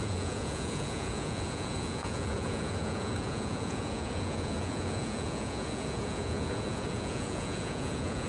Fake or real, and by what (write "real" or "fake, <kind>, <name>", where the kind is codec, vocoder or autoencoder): fake, vocoder, Vocos